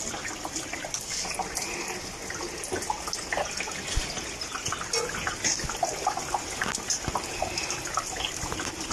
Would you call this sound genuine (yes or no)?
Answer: yes